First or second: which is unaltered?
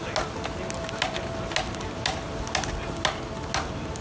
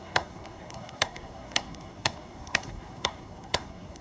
first